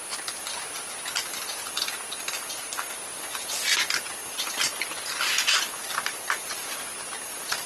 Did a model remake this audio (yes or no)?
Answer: no